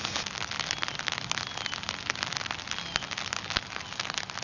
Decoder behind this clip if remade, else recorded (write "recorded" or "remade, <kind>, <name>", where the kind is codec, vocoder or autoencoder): recorded